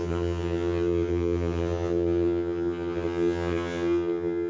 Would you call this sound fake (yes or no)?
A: yes